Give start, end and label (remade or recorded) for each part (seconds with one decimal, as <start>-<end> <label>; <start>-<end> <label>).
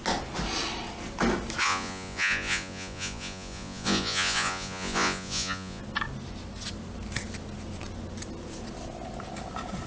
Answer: 0.0-1.6 recorded; 1.6-5.8 remade; 5.8-9.9 recorded